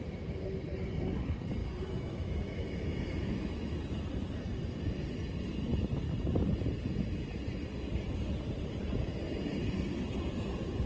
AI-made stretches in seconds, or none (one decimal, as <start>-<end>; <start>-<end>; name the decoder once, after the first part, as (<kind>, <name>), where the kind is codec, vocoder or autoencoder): 1.6-3.8 (autoencoder, DAC-VAE)

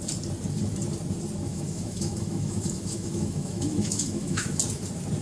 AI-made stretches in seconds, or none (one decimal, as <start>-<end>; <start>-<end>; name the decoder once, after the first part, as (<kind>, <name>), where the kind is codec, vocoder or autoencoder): 1.5-4.6 (autoencoder, DAC-VAE)

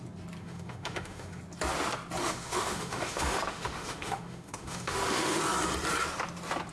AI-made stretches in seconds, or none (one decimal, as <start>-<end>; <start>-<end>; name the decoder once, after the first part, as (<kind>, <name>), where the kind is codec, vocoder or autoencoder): 0.4-1.4 (autoencoder, DAC-VAE); 2.2-5.4

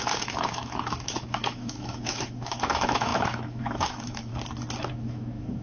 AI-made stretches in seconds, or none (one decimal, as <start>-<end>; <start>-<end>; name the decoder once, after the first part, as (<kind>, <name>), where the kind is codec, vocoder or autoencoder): 0.0-4.3 (autoencoder, DAC-VAE); 4.9-5.6

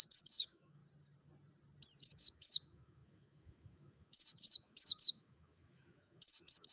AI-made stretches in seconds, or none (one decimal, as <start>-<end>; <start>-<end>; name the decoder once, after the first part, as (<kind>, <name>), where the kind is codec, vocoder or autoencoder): 0.0-0.8 (autoencoder, DAC-VAE); 2.0-6.7

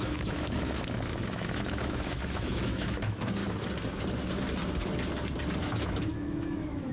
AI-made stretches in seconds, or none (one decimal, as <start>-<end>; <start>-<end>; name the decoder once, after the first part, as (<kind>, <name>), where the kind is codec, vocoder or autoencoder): 0.0-3.4 (autoencoder, DAC-VAE); 5.6-6.9

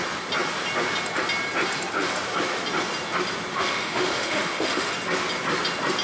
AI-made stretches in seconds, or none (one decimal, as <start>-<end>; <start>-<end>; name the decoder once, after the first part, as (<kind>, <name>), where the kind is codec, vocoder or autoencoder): 3.5-4.9 (autoencoder, DAC-VAE)